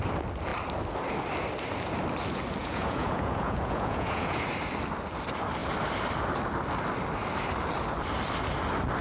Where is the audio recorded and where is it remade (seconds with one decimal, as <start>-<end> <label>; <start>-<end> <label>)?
0.0-2.6 recorded; 2.6-4.4 remade; 4.4-9.0 recorded